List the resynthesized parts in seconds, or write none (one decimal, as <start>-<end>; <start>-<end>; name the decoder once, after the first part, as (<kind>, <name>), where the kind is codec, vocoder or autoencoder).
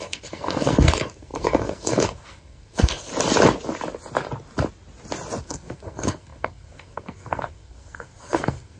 0.0-3.1 (codec, SNAC); 5.4-8.8